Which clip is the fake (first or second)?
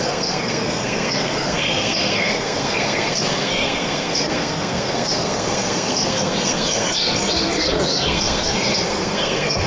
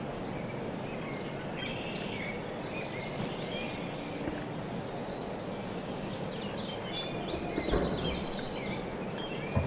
first